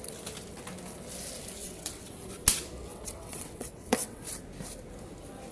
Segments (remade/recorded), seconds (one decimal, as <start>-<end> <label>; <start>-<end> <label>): 0.0-1.6 recorded; 1.6-2.1 remade; 2.1-2.9 recorded; 2.9-4.2 remade; 4.2-5.5 recorded